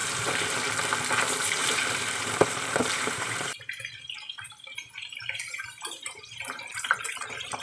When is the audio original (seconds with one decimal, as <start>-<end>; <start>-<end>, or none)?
0.0-1.6; 6.2-7.6